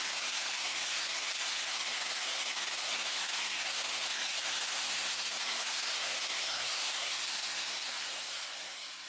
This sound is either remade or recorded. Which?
remade